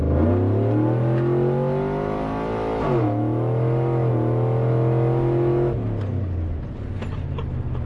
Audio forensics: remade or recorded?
recorded